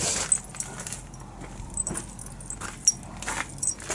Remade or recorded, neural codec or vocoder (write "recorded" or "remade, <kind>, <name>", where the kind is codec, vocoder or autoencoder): recorded